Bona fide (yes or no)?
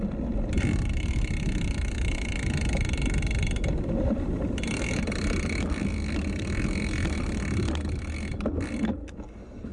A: yes